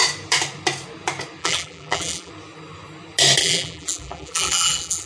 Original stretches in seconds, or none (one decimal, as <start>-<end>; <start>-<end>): 0.0-1.4; 2.3-3.4